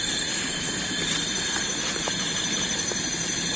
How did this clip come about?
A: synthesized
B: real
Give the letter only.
B